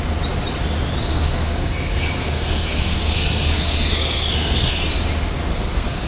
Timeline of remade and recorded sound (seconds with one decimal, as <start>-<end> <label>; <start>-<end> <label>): 0.0-1.1 recorded; 1.1-4.8 remade; 4.8-5.5 recorded; 5.5-6.1 remade